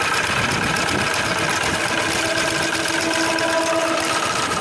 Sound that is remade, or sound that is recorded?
recorded